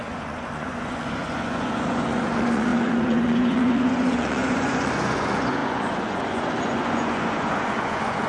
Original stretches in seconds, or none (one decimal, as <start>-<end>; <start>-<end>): none